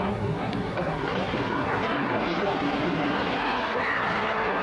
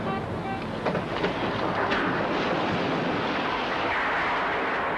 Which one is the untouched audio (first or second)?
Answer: second